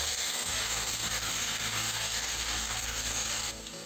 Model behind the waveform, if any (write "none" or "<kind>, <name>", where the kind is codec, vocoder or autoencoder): codec, DAC